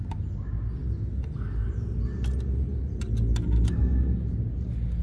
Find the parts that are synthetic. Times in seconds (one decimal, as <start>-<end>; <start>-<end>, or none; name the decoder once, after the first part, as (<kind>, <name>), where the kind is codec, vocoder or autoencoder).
none